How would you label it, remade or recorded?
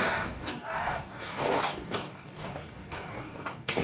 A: remade